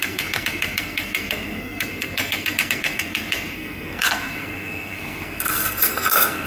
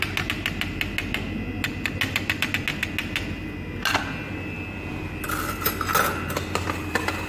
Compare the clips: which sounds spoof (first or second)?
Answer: first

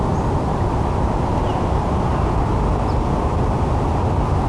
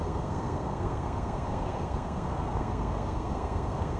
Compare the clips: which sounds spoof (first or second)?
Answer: second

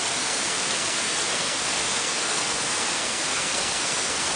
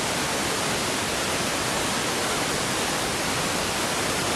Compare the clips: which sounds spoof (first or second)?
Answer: first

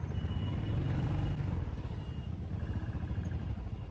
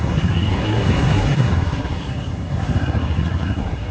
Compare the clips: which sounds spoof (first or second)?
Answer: second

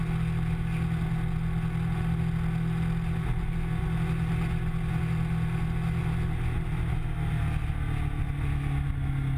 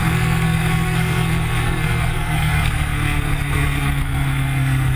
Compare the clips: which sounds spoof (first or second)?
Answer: second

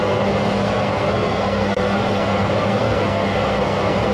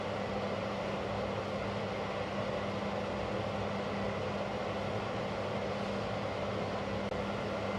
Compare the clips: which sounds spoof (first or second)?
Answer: first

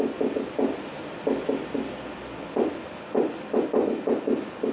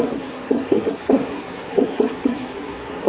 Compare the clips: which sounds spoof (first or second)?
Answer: second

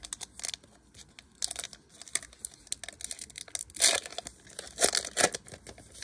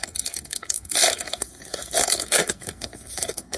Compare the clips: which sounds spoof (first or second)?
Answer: second